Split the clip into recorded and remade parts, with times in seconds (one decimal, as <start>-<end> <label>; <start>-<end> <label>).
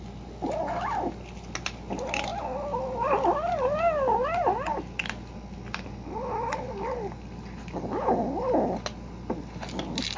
0.0-10.2 recorded